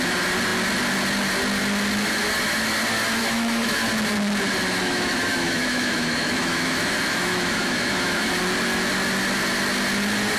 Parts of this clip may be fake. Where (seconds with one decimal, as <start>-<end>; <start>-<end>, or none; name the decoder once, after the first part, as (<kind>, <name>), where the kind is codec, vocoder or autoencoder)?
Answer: 3.2-3.9 (autoencoder, DAC-VAE); 4.8-8.4